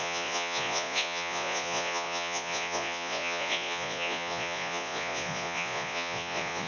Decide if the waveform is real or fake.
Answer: fake